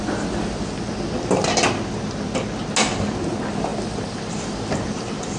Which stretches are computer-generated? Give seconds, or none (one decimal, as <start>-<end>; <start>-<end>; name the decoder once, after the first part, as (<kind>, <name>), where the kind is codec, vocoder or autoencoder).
none